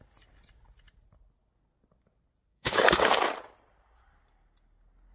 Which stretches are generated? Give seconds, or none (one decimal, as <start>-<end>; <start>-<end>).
2.5-3.2